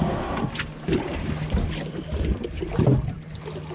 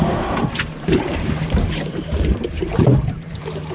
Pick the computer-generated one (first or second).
second